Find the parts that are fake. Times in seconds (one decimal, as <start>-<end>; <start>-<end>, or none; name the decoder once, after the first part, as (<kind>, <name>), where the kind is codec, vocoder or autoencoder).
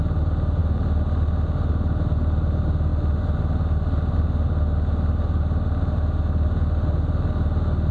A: none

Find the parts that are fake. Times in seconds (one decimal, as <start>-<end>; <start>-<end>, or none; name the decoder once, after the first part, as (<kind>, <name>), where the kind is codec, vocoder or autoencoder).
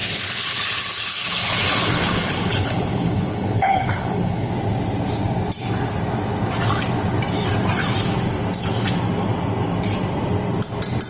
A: 0.0-4.5 (codec, HILCodec)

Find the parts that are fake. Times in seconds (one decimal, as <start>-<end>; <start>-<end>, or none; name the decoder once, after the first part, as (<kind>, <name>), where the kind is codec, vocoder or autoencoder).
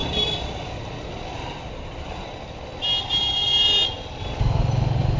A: none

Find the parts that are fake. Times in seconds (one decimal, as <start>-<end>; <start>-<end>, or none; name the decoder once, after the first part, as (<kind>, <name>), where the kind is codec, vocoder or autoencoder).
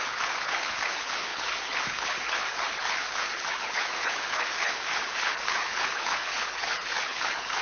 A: 0.0-7.6 (codec, HILCodec)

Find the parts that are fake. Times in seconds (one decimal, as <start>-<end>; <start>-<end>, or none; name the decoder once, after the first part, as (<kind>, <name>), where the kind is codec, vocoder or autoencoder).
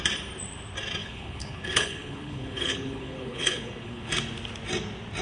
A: 1.0-4.1 (codec, HILCodec)